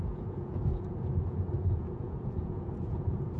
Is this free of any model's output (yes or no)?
no